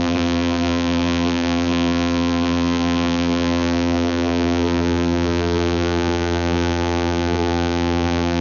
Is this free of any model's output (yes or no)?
no